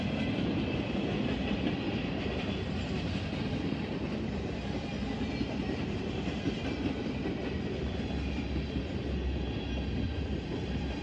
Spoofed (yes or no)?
no